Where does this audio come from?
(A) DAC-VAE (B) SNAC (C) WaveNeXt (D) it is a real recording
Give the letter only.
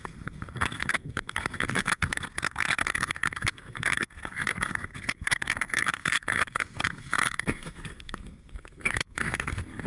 B